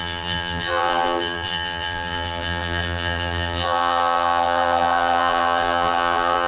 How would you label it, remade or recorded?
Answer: remade